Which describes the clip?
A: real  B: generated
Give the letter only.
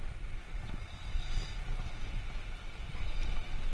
A